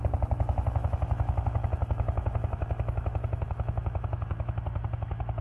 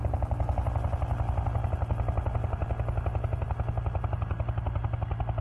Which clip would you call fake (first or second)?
first